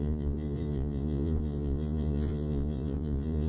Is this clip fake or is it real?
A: fake